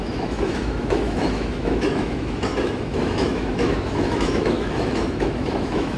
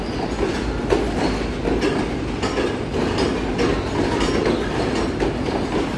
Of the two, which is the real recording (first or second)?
second